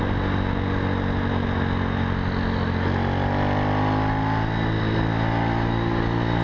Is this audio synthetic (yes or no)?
no